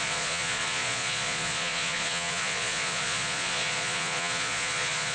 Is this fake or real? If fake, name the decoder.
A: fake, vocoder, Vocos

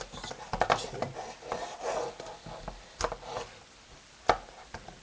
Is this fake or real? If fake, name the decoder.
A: real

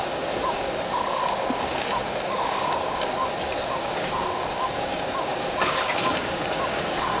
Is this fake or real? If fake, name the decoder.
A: fake, codec, DAC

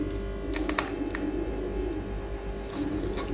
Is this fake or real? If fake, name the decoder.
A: real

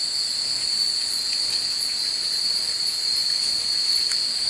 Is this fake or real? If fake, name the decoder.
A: real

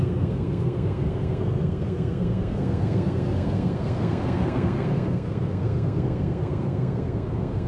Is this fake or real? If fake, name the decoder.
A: fake, codec, SNAC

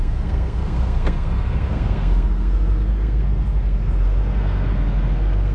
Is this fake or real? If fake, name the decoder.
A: fake, codec, SNAC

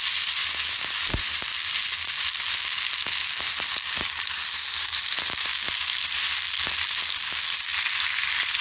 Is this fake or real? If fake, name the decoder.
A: real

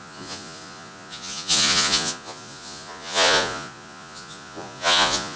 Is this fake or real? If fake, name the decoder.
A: fake, vocoder, Vocos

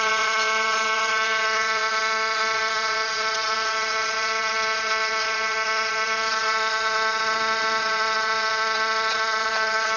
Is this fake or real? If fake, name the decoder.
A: fake, vocoder, WaveNeXt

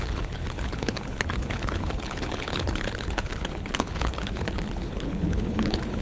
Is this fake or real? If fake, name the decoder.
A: fake, codec, HILCodec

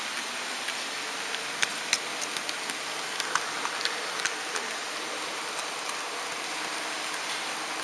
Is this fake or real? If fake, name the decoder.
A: real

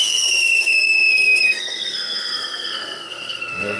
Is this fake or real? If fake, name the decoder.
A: fake, codec, SNAC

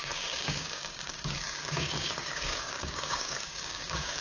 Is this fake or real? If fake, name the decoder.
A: fake, codec, DAC